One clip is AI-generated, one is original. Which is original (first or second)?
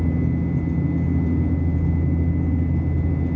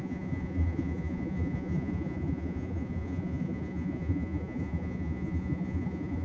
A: first